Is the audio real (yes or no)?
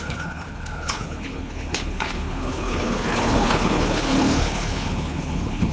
no